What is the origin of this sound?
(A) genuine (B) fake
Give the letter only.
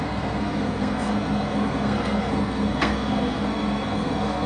B